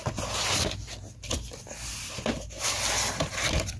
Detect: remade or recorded recorded